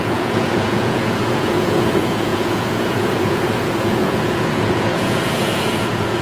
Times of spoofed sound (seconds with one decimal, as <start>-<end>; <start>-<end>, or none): 0.0-6.2